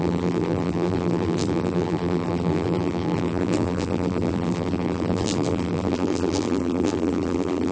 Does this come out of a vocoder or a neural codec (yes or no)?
yes